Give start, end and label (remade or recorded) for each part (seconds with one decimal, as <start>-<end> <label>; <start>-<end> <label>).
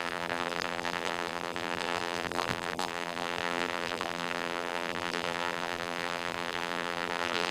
0.0-7.5 remade